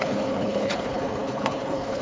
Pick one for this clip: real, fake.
fake